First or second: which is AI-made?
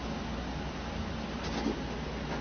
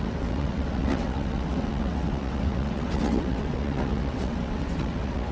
second